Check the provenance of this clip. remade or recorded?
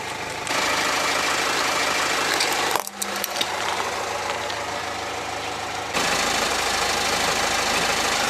recorded